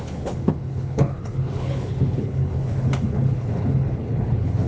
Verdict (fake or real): fake